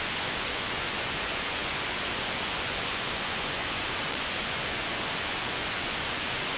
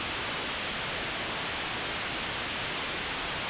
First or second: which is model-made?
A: first